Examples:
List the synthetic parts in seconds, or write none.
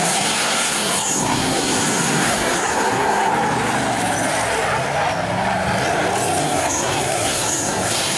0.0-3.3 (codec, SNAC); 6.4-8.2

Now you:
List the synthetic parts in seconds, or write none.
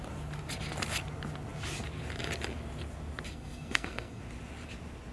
3.3-4.2 (codec, SNAC)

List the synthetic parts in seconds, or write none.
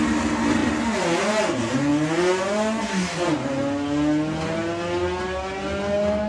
none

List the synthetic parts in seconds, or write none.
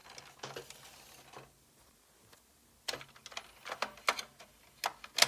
none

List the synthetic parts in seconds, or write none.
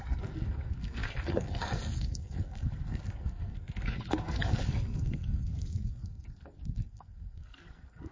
0.0-8.1 (codec, SNAC)